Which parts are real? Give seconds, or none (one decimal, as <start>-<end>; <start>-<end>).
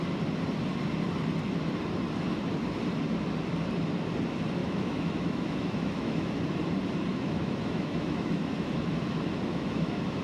0.0-4.6; 6.4-7.1; 8.9-9.5